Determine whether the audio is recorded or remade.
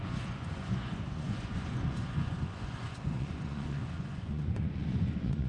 remade